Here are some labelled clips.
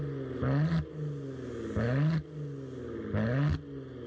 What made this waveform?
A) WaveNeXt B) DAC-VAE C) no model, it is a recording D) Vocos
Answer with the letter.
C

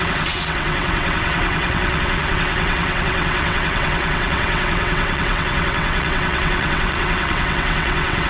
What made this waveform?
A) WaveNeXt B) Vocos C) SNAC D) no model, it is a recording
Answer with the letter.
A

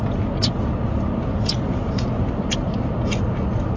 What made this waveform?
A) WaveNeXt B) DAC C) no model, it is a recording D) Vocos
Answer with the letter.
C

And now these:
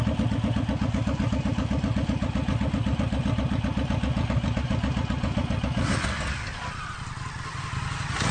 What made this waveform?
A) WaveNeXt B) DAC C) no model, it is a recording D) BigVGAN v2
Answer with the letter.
C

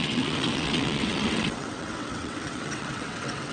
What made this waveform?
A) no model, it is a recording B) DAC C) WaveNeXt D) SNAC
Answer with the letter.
C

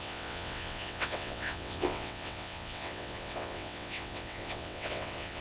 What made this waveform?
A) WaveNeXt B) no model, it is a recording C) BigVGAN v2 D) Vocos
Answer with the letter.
A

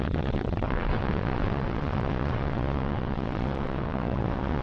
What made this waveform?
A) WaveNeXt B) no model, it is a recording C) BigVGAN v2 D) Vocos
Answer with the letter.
A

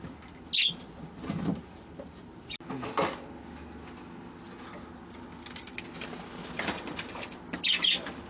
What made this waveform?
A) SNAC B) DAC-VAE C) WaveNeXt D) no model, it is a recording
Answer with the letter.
D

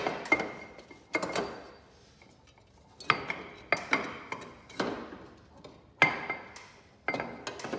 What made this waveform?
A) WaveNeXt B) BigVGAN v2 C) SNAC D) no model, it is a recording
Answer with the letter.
D